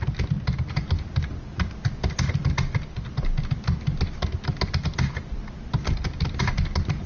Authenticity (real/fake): real